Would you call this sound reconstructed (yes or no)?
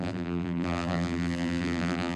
yes